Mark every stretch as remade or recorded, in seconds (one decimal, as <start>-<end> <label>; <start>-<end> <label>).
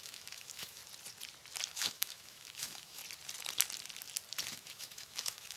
0.0-0.8 remade; 0.8-1.7 recorded; 1.7-3.0 remade; 3.0-4.5 recorded; 4.5-5.6 remade